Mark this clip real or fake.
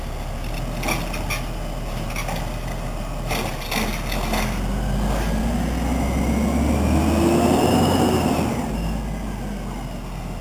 real